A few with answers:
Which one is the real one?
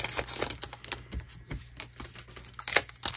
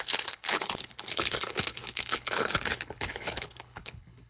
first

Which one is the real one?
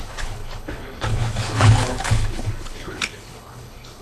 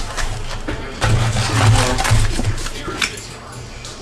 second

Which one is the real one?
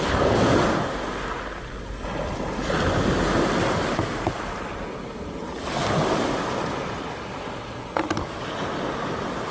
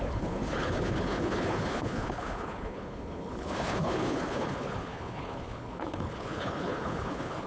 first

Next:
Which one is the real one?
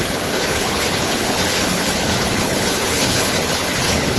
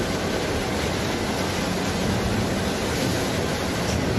second